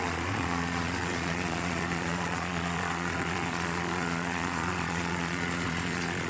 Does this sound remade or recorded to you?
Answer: remade